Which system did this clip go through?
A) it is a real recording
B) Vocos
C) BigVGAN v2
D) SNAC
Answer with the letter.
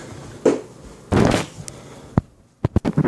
A